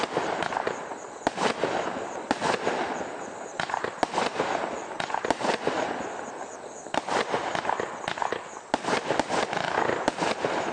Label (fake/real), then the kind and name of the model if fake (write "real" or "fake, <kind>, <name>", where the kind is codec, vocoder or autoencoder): real